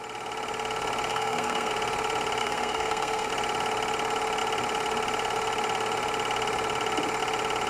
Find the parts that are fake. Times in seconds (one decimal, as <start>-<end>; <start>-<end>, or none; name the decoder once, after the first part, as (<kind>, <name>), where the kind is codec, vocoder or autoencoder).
1.1-1.7 (codec, SNAC); 2.4-3.3